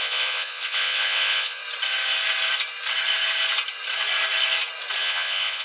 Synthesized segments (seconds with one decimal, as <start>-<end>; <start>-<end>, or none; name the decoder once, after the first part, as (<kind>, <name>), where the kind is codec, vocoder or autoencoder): 0.0-1.6 (vocoder, Vocos); 5.0-5.6